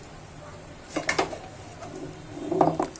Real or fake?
real